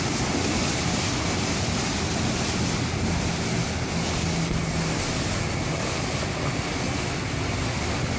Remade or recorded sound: recorded